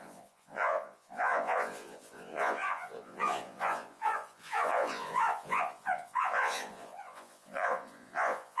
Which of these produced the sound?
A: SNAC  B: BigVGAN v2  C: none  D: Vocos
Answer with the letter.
D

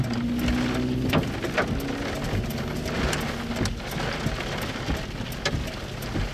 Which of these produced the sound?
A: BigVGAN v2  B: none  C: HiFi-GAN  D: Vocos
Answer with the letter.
B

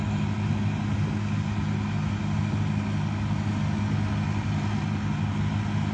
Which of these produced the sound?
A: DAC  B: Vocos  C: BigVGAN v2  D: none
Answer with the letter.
D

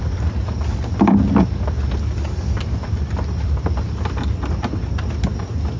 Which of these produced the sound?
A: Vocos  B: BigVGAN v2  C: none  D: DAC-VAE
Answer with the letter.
C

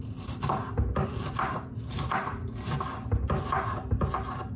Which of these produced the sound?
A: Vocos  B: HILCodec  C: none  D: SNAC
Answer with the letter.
C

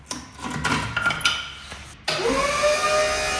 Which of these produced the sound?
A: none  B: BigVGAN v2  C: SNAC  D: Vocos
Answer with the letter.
A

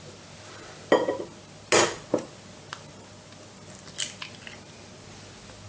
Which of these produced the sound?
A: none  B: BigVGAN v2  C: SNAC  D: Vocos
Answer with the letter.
A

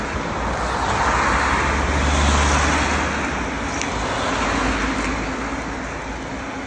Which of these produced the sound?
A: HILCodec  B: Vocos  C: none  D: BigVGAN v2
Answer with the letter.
C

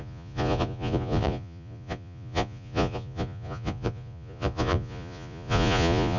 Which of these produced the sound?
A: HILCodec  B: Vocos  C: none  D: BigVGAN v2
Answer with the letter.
B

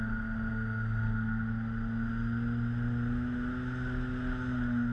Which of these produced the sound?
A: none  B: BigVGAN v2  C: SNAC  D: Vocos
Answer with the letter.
A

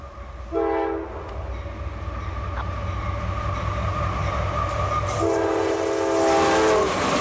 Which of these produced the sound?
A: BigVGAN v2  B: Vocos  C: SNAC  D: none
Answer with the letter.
D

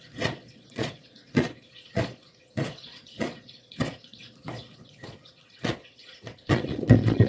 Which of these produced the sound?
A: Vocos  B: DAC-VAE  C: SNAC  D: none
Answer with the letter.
A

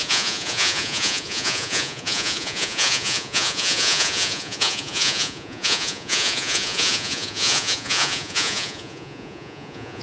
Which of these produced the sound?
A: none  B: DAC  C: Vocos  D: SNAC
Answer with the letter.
C